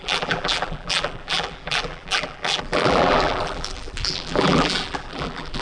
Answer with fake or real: fake